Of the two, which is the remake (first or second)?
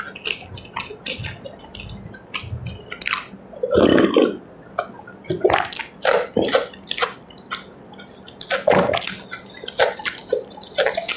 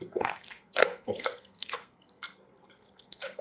second